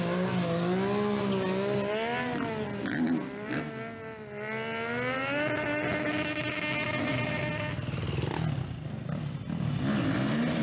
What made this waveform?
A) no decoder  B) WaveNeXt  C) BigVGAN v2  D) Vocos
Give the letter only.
A